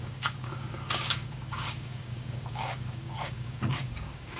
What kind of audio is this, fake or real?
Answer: fake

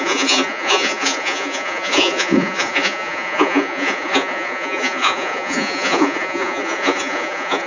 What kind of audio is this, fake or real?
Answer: fake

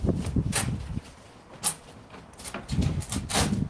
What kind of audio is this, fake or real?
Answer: real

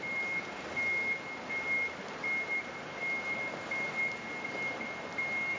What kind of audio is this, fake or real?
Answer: real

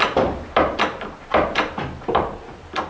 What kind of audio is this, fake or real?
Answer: fake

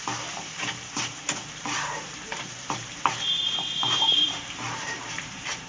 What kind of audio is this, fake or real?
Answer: fake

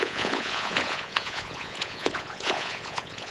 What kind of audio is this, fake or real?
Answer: fake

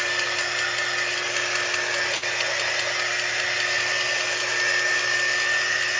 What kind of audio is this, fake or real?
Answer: real